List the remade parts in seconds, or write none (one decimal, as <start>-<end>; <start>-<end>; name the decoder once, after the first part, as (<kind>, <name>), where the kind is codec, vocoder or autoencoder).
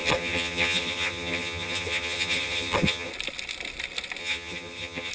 0.0-3.1 (vocoder, HiFi-GAN); 4.2-5.1